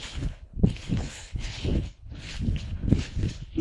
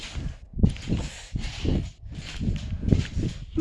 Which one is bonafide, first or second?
second